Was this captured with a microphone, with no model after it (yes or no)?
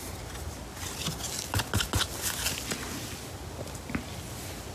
yes